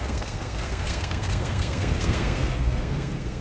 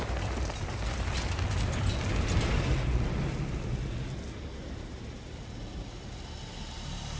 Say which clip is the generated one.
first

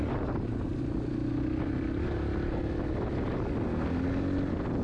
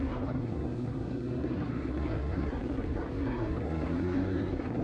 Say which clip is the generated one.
second